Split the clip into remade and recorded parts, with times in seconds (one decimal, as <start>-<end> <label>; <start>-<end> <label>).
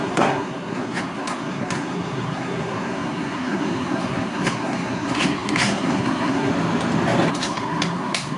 0.0-6.5 remade; 6.5-7.3 recorded; 7.3-8.4 remade